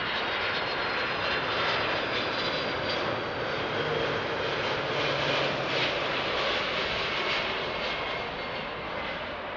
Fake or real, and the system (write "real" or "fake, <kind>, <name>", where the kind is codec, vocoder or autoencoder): real